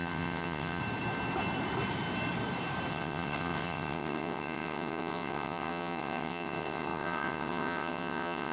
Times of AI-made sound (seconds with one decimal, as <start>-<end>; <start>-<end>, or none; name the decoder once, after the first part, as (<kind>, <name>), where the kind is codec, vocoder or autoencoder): 0.0-0.8 (vocoder, WaveNeXt); 2.9-8.5